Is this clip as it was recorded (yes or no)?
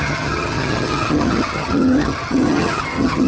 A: no